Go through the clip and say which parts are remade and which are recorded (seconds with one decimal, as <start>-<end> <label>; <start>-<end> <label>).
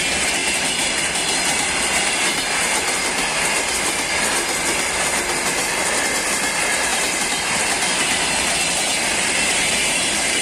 0.0-6.9 recorded; 6.9-8.0 remade; 8.0-10.4 recorded